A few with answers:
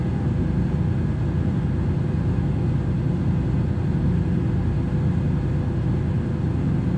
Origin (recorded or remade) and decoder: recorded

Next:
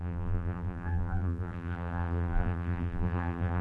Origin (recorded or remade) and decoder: remade, vocoder, BigVGAN v2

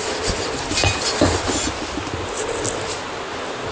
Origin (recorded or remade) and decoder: recorded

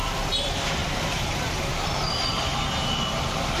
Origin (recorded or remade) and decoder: remade, vocoder, BigVGAN v2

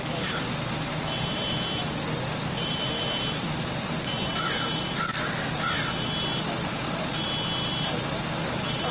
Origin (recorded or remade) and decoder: remade, vocoder, BigVGAN v2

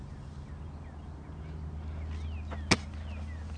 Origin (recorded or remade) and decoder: recorded